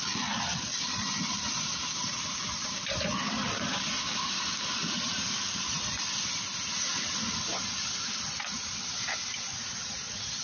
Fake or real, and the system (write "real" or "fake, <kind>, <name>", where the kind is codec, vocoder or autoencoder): real